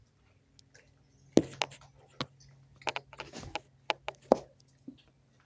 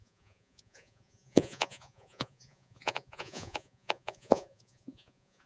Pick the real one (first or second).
first